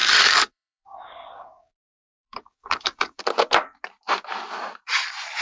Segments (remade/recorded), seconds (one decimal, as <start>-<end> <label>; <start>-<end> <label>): 0.0-3.2 remade; 3.2-5.4 recorded